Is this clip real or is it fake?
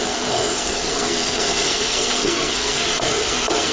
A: fake